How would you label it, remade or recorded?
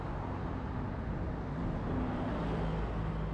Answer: recorded